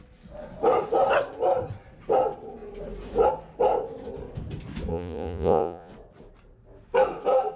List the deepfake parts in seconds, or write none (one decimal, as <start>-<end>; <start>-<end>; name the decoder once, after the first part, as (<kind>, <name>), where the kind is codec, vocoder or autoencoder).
4.9-5.9 (vocoder, Vocos)